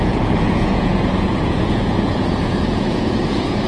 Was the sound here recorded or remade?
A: remade